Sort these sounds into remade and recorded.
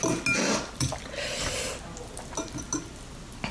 recorded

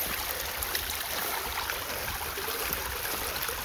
recorded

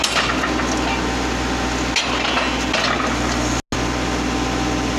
recorded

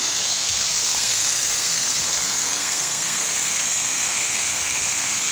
remade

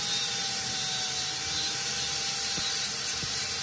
recorded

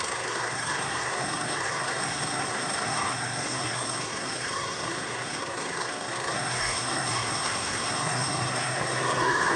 remade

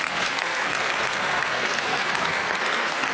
remade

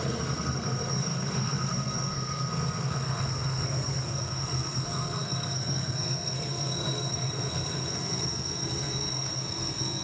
remade